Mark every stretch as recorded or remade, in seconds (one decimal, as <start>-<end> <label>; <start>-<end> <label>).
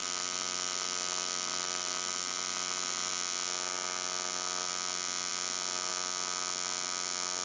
0.0-3.1 remade; 3.1-7.4 recorded